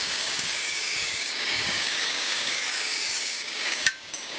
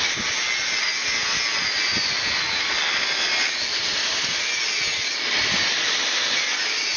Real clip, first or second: second